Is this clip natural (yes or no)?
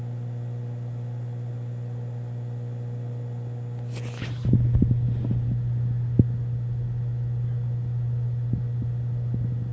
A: yes